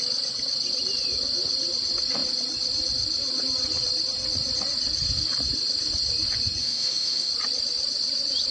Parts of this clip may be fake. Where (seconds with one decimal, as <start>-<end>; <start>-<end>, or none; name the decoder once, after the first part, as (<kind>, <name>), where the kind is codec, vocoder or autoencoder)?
6.6-7.3 (autoencoder, DAC-VAE)